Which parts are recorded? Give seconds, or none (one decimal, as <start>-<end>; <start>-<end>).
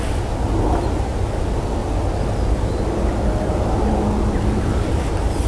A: 0.0-5.5